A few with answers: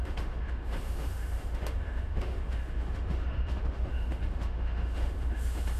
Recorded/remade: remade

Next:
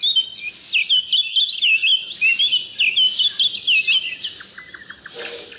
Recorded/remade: recorded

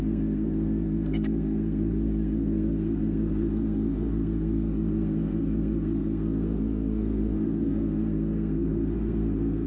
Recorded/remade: remade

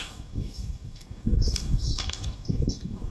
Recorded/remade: remade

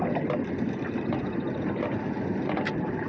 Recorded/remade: recorded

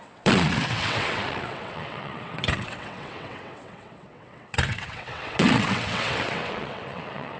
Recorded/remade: remade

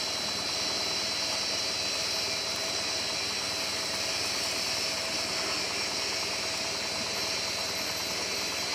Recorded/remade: recorded